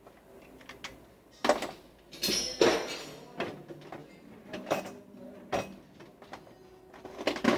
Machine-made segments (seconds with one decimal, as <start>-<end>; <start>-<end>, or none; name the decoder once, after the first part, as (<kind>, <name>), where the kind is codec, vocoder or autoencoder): none